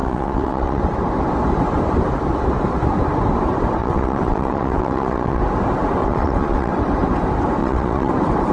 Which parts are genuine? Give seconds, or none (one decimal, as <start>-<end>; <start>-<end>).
0.8-3.8; 5.4-6.0; 6.7-7.6; 8.1-8.5